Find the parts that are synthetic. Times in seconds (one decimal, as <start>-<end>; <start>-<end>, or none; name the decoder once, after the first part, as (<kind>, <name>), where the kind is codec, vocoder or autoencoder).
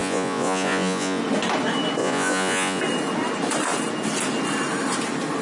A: 0.0-1.2 (vocoder, Vocos); 2.0-2.8